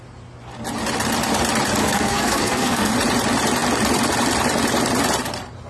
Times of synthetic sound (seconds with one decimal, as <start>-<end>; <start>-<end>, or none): 1.8-2.9